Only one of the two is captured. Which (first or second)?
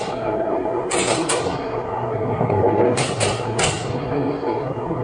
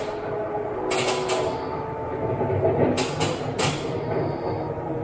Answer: second